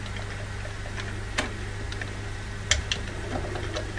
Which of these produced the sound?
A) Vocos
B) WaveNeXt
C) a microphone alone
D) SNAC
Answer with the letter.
C